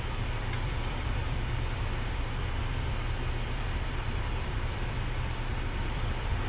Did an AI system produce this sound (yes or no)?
yes